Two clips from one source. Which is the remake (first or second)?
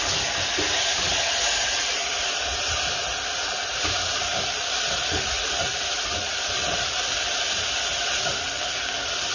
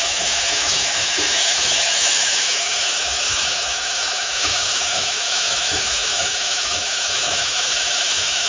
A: second